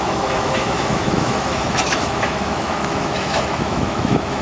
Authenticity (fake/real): fake